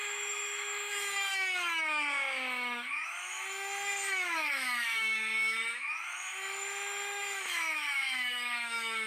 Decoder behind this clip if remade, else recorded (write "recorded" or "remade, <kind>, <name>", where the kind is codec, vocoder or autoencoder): remade, autoencoder, DAC-VAE